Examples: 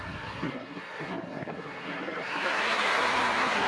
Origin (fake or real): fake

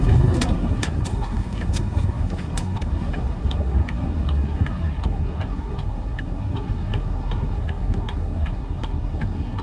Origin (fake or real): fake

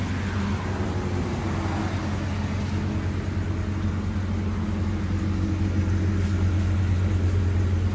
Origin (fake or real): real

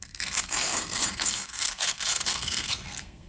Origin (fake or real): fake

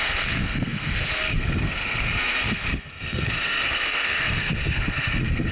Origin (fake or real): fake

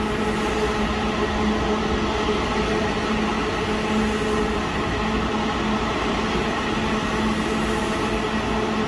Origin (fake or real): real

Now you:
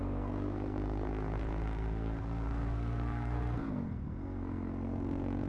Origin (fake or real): fake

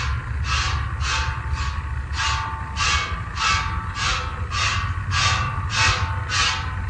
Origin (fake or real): real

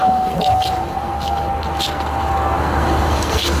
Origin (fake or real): fake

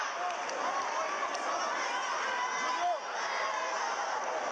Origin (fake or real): real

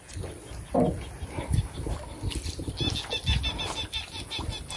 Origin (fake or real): real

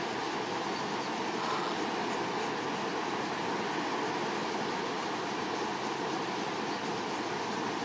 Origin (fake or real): real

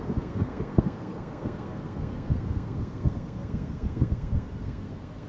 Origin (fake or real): fake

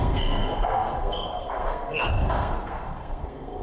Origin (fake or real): fake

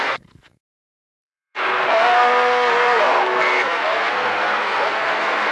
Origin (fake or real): fake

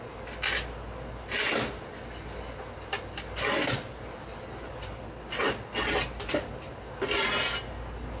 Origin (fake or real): real